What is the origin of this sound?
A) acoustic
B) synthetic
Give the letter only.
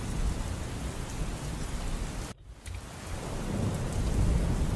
A